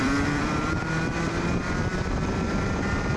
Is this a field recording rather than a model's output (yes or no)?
no